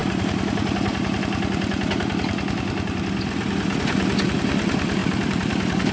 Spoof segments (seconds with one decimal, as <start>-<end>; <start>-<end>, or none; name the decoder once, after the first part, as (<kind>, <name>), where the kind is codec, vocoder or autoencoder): 0.0-1.2 (vocoder, BigVGAN v2); 5.0-5.9